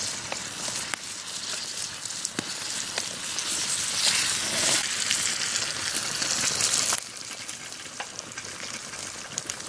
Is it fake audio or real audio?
real